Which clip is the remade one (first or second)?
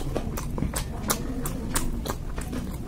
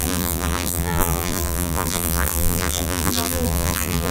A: second